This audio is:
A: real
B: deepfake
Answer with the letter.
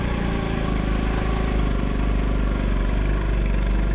A